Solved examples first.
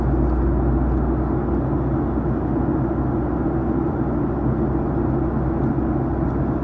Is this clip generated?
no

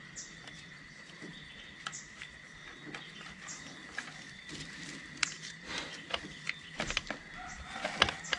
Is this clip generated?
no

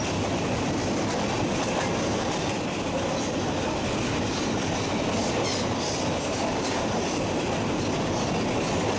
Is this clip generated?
no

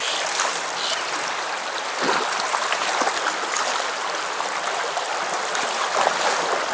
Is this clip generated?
no